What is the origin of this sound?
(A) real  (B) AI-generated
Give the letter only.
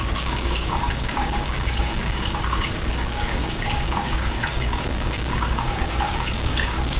B